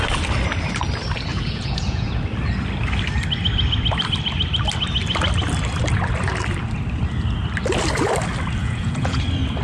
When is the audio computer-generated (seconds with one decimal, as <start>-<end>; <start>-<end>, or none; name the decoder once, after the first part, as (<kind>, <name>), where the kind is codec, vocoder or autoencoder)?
1.3-2.1 (vocoder, Vocos); 8.6-9.2